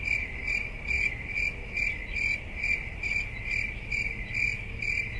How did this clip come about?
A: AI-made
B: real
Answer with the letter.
B